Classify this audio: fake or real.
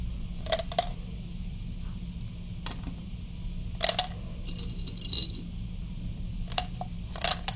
real